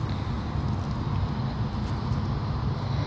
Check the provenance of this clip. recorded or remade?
recorded